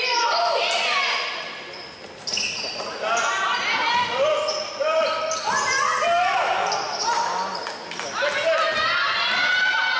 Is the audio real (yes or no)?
yes